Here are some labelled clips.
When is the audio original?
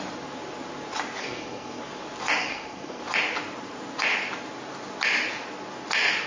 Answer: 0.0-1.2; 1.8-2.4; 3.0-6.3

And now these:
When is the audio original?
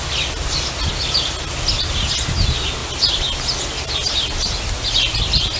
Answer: 0.0-5.6